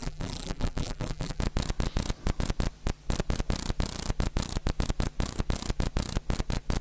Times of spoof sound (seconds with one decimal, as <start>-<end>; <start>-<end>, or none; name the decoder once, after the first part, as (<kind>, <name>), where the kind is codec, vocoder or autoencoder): 0.0-1.4 (vocoder, BigVGAN v2)